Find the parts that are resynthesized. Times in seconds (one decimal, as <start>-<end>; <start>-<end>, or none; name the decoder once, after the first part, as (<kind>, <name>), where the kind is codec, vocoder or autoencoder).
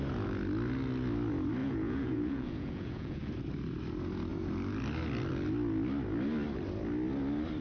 1.6-3.3 (vocoder, Vocos)